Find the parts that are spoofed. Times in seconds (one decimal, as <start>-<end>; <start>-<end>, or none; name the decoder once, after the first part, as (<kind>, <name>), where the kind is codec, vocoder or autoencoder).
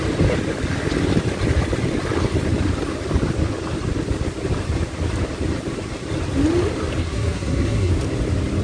7.0-7.9 (codec, SNAC)